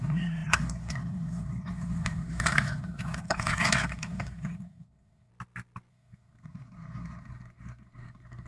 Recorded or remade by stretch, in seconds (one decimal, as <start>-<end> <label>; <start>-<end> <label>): 0.0-5.3 remade; 5.3-5.9 recorded; 5.9-8.5 remade